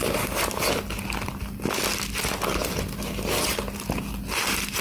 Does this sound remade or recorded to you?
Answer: recorded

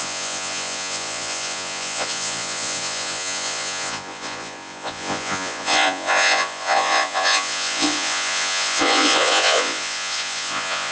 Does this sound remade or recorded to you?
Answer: remade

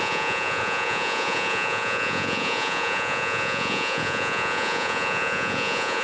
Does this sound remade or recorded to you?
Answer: remade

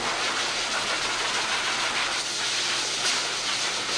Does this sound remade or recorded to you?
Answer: recorded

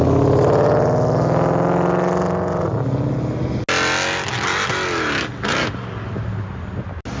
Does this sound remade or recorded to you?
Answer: recorded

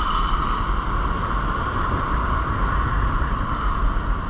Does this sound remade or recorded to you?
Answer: recorded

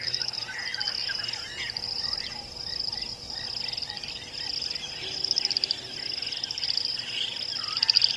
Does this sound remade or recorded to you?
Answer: recorded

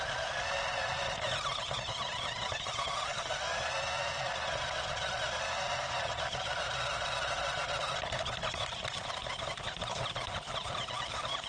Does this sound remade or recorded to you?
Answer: recorded